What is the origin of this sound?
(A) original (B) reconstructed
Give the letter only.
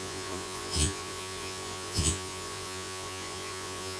B